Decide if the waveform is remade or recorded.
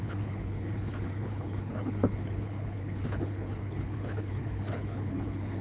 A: remade